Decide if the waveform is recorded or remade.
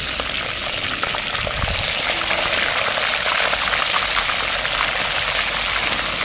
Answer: recorded